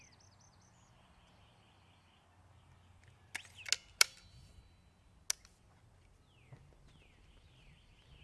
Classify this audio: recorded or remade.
recorded